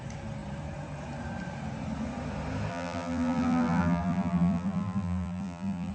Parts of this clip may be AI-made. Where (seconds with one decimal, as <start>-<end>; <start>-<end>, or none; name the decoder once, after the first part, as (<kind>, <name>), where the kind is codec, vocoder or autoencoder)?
2.7-5.9 (vocoder, BigVGAN v2)